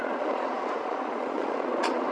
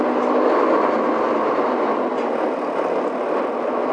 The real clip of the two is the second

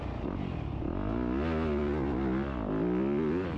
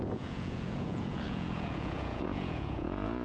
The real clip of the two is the first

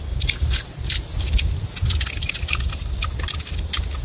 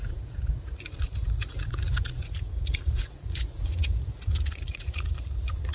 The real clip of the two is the first